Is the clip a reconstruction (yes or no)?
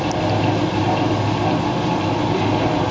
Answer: no